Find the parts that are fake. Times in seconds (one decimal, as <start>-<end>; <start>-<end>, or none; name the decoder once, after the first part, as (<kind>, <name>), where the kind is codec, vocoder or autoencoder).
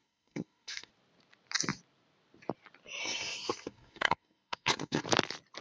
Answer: 0.0-0.9 (codec, SNAC); 3.0-5.0